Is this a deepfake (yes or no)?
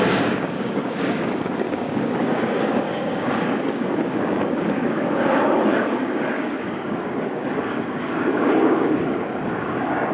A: yes